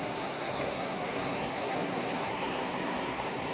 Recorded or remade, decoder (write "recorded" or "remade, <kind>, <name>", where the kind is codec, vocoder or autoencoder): remade, codec, SNAC